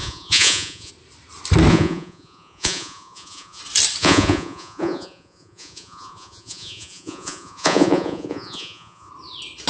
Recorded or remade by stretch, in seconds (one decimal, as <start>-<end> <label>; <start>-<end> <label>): 0.0-0.9 remade; 0.9-1.7 recorded; 1.7-3.6 remade; 3.6-4.0 recorded; 4.0-9.1 remade; 9.1-9.7 recorded